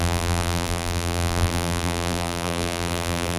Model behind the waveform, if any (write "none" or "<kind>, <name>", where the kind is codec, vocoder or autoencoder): vocoder, BigVGAN v2